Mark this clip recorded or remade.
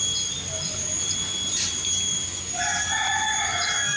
recorded